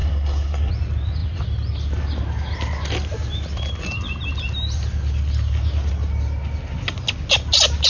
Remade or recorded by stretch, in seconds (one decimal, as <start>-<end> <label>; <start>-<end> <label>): 0.0-0.7 remade; 0.7-7.9 recorded